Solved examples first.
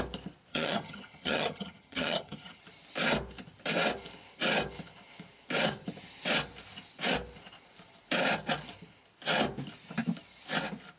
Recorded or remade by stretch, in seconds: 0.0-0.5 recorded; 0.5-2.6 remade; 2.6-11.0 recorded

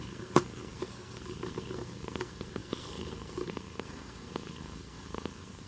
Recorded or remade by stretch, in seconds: 0.0-5.7 remade

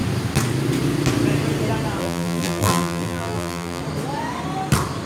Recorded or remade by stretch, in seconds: 0.0-2.0 recorded; 2.0-3.8 remade; 3.8-5.1 recorded

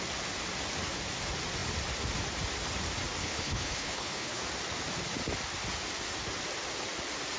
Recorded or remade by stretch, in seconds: 0.0-3.2 recorded; 3.2-4.4 remade; 4.4-7.4 recorded

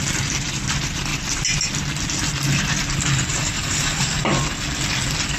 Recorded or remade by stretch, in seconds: 0.0-3.3 recorded; 3.3-4.4 remade; 4.4-5.4 recorded

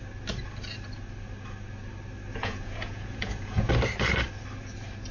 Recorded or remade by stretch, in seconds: 0.0-2.3 recorded; 2.3-3.7 remade; 3.7-5.1 recorded